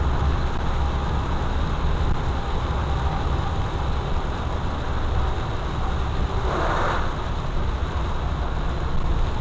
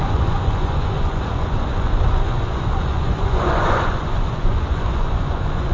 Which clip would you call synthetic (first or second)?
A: second